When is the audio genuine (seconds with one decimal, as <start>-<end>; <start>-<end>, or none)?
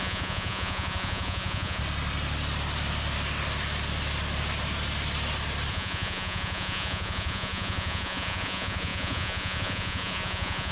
1.8-5.7